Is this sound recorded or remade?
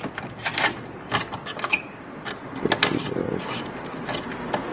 recorded